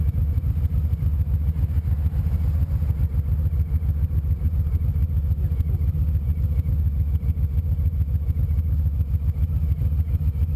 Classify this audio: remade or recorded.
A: recorded